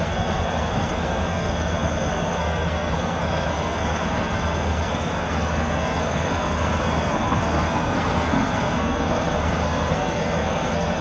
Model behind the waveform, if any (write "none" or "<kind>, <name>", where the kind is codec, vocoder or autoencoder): codec, SNAC